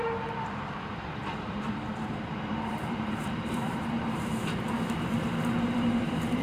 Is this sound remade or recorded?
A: remade